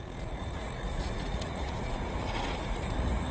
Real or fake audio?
fake